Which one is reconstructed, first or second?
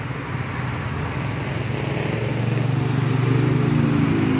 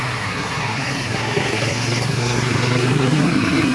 second